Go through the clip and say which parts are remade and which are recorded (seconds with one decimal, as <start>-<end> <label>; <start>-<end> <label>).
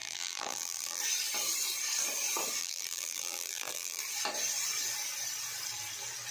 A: 0.0-1.0 remade; 1.0-2.6 recorded; 2.6-4.0 remade; 4.0-6.3 recorded